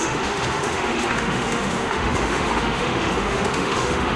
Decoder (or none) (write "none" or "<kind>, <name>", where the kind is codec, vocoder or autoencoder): autoencoder, DAC-VAE